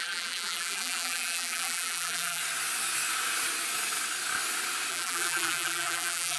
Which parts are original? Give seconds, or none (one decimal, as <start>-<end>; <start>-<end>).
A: 2.4-4.9